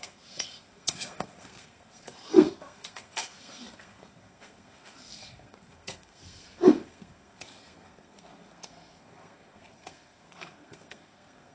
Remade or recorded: remade